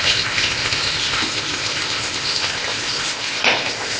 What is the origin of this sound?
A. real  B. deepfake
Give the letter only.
B